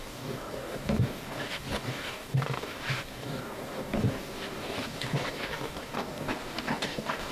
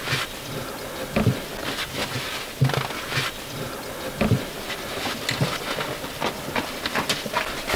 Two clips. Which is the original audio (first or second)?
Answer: second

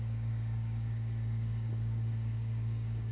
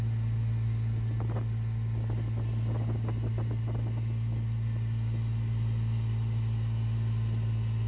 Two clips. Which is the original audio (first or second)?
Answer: second